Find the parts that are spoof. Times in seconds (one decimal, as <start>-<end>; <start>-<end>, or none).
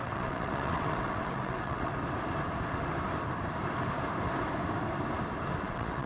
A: 0.0-1.9; 5.6-6.1